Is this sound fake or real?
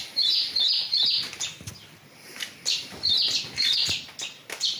real